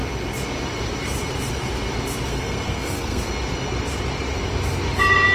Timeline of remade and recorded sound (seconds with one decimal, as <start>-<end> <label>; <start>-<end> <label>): 0.0-2.3 recorded; 2.3-3.2 remade; 3.2-5.3 recorded